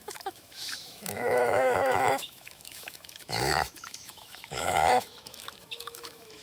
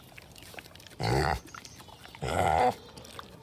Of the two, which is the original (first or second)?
second